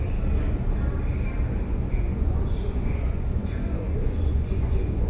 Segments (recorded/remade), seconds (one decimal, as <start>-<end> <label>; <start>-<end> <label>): 0.0-1.7 recorded; 1.7-5.1 remade